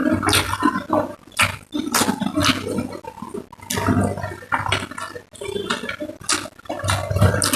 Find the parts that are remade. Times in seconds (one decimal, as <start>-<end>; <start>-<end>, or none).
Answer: none